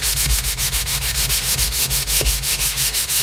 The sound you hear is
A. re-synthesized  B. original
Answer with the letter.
A